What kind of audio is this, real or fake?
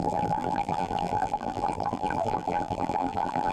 fake